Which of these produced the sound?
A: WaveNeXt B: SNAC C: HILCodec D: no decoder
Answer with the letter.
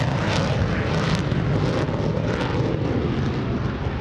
D